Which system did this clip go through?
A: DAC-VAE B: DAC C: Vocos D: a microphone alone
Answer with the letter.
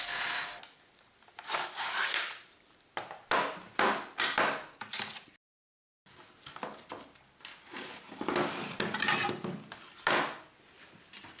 D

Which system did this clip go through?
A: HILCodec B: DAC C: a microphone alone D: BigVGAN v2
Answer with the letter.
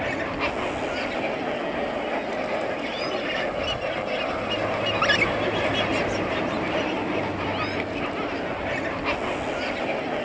C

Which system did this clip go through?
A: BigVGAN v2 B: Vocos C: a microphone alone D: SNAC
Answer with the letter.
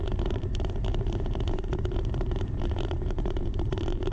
A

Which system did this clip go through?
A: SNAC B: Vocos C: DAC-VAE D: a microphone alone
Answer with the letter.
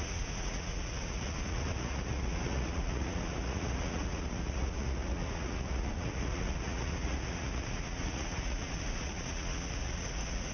B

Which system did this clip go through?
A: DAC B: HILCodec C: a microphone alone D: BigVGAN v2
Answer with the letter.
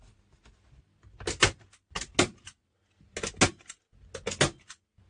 C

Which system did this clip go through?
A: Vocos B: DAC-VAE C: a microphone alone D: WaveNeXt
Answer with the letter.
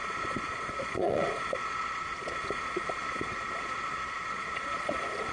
A